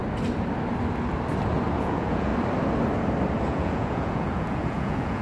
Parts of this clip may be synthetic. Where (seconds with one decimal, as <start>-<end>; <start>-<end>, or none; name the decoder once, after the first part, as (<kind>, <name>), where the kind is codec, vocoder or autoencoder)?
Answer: 1.8-2.3 (vocoder, Vocos); 3.4-5.2

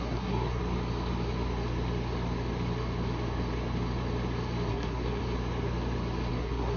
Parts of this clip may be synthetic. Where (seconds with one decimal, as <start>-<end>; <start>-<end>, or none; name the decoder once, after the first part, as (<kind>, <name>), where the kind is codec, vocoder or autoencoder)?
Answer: 0.0-0.6 (codec, SNAC); 4.7-5.2; 6.3-6.8

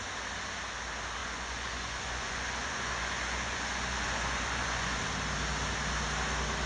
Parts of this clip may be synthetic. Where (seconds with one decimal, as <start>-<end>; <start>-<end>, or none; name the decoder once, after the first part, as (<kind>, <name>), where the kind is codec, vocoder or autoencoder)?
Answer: 1.2-5.0 (vocoder, Vocos)

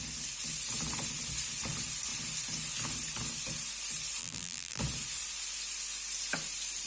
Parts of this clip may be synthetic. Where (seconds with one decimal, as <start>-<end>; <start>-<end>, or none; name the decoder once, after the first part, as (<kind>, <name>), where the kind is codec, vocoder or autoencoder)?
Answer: 4.2-4.8 (vocoder, BigVGAN v2)